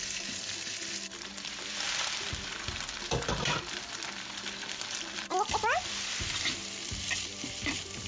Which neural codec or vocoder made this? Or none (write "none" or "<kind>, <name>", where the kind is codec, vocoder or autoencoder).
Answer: vocoder, BigVGAN v2